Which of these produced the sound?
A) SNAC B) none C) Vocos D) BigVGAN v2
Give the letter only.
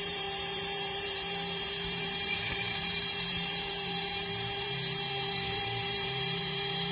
D